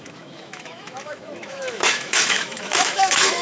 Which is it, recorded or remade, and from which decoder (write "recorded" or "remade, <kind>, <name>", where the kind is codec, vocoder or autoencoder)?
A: remade, autoencoder, DAC-VAE